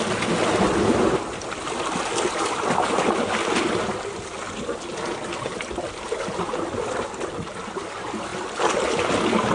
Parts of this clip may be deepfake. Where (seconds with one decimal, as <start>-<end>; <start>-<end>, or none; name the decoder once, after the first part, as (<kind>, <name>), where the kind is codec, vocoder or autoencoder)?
none